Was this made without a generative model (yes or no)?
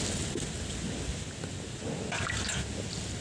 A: yes